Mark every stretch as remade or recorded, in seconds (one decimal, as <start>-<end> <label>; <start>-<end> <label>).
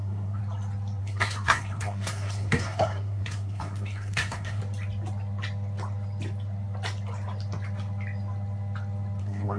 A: 0.0-0.4 remade; 0.4-1.0 recorded; 1.0-4.6 remade; 4.6-9.2 recorded; 9.2-9.6 remade